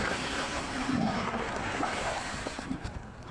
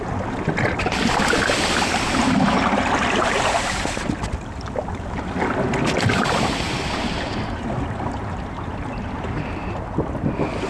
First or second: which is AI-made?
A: first